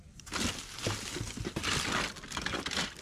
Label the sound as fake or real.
real